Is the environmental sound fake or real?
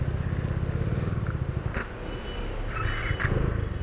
real